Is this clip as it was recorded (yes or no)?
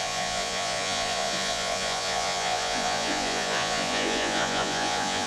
no